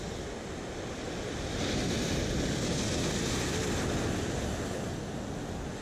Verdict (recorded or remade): recorded